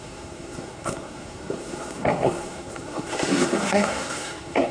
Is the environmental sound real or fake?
fake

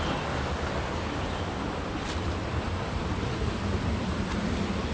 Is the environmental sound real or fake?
fake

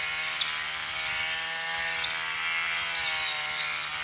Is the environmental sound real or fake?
real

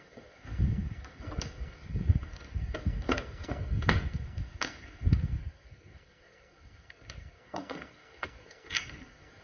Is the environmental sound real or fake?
fake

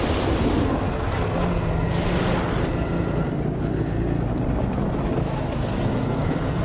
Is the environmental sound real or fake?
real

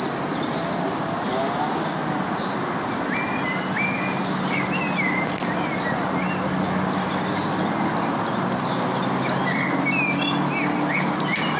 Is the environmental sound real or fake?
real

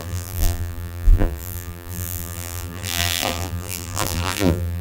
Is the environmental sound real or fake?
fake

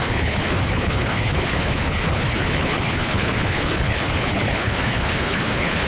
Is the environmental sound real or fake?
fake